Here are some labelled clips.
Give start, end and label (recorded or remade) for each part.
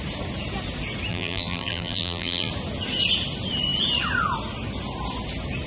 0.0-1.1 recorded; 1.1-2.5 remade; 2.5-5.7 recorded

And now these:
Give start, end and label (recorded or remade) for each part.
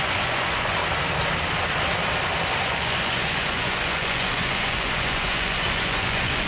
0.0-0.8 remade; 0.8-2.6 recorded; 2.6-6.5 remade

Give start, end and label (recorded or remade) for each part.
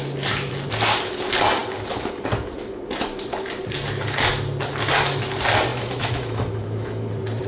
0.0-5.7 recorded; 5.7-7.1 remade; 7.1-7.5 recorded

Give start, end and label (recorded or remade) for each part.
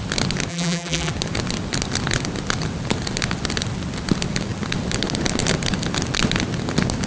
0.0-0.5 recorded; 0.5-1.1 remade; 1.1-7.1 recorded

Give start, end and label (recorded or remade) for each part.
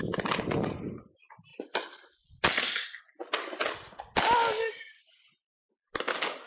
0.0-6.5 recorded